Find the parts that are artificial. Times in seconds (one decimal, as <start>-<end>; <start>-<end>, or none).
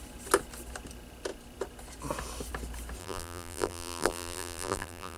3.0-5.2